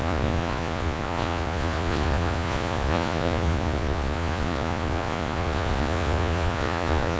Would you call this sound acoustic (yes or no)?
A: no